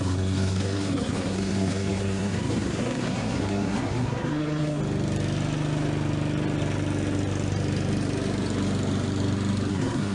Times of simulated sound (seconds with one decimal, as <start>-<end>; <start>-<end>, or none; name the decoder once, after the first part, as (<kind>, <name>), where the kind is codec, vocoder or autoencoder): 0.0-4.8 (codec, SNAC); 9.7-10.1